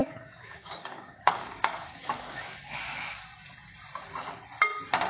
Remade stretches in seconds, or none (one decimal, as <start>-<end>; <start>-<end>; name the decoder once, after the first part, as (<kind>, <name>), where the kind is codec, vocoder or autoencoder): 0.0-3.1 (codec, DAC)